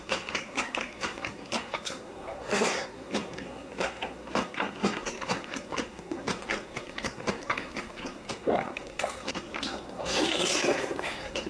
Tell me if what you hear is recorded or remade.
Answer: remade